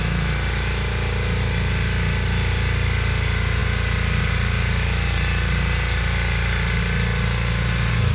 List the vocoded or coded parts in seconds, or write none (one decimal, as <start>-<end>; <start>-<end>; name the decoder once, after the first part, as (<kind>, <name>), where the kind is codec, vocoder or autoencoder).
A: none